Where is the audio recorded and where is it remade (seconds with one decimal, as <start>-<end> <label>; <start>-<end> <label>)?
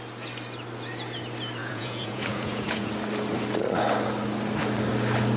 0.0-1.6 recorded; 1.6-2.9 remade; 2.9-5.4 recorded